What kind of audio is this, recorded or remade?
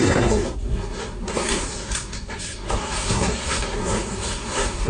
remade